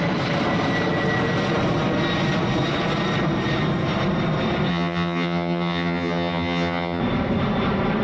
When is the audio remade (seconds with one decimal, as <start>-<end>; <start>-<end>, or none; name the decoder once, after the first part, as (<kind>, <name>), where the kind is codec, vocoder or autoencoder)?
4.7-7.0 (vocoder, HiFi-GAN)